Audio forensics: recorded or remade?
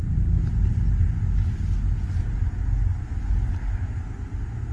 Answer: recorded